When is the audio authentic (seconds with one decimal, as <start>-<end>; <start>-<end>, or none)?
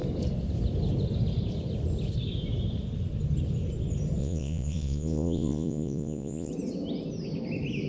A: 0.0-4.2; 6.5-7.9